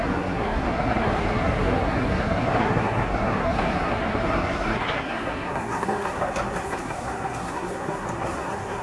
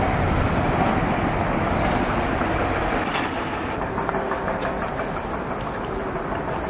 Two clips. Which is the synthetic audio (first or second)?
first